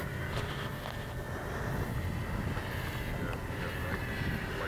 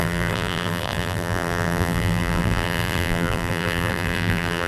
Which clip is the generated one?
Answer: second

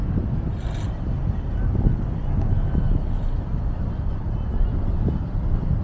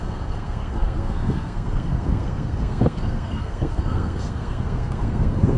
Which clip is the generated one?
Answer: second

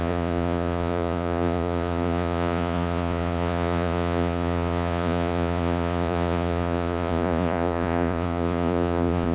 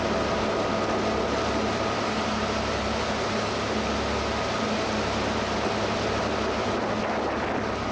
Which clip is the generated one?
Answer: first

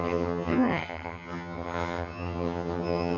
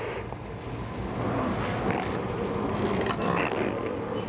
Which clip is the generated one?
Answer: first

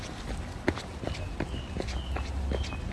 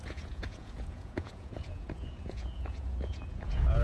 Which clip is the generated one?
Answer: second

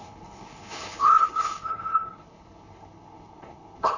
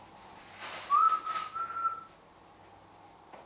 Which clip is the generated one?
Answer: first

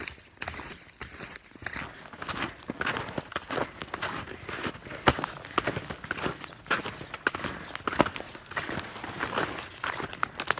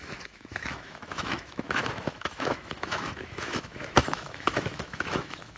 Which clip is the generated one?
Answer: second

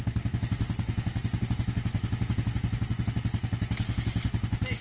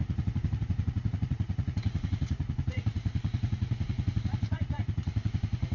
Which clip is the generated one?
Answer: second